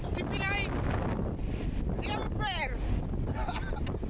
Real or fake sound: real